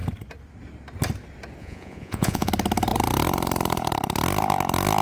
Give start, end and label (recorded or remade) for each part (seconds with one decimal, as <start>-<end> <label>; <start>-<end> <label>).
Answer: 0.0-1.6 recorded; 1.6-2.5 remade; 2.5-5.0 recorded